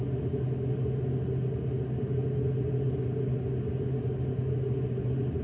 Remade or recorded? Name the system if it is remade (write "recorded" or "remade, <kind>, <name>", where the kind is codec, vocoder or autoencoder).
recorded